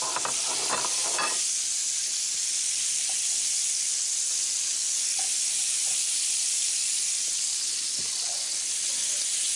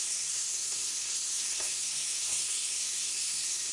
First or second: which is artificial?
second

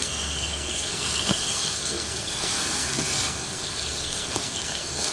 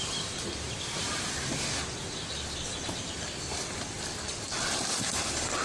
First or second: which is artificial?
first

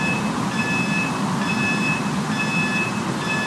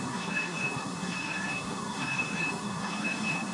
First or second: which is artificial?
second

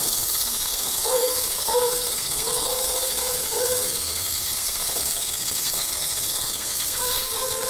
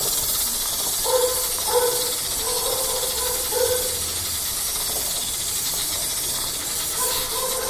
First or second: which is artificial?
first